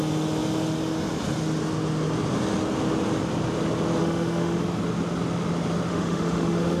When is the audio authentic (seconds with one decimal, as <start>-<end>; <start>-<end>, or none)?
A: 0.0-4.0; 4.6-5.9

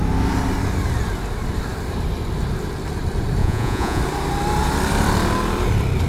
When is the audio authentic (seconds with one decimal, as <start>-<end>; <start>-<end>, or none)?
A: 0.0-3.4; 4.0-6.1

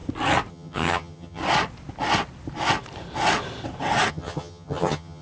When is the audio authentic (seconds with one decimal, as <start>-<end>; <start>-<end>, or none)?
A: 0.0-0.5; 1.4-4.1